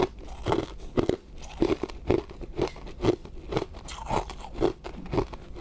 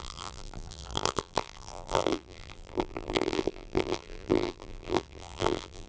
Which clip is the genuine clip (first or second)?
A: first